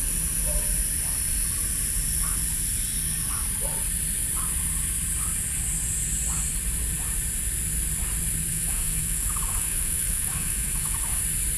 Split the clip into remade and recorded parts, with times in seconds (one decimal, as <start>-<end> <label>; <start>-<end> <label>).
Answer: 0.0-8.5 recorded; 8.5-11.2 remade; 11.2-11.6 recorded